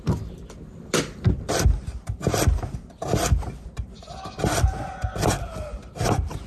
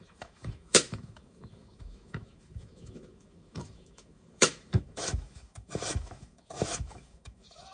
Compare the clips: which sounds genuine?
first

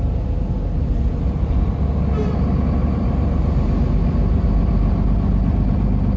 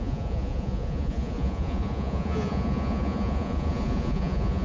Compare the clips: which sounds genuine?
first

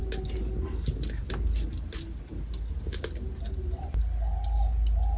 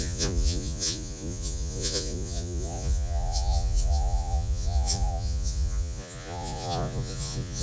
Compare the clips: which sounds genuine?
first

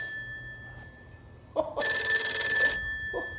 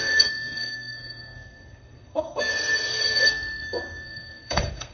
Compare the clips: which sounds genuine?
first